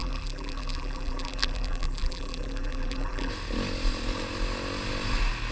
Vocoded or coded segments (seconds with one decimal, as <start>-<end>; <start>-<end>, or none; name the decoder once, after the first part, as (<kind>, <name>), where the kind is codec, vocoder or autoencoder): 0.0-3.3 (vocoder, BigVGAN v2)